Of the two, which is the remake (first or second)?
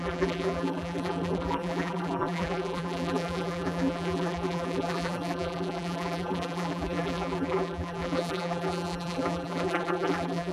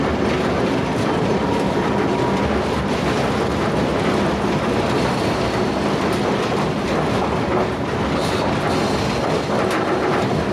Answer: first